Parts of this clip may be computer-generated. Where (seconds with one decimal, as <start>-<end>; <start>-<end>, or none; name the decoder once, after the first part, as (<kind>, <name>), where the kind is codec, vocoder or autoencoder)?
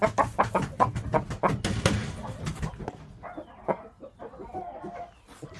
none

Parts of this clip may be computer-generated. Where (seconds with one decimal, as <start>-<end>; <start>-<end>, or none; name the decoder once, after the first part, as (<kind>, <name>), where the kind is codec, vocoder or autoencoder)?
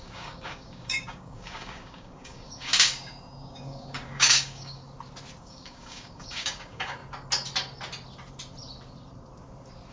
0.0-4.8 (codec, DAC); 5.4-7.0